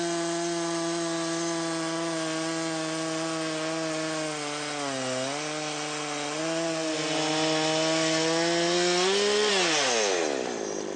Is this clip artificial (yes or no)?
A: no